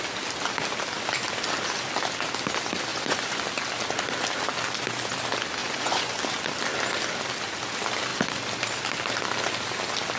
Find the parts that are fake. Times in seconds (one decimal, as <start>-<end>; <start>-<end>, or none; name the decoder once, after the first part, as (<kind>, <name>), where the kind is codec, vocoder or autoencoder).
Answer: 2.9-3.4 (vocoder, Vocos); 5.6-6.2